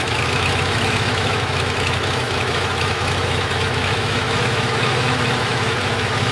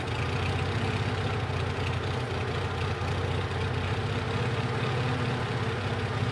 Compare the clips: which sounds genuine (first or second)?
second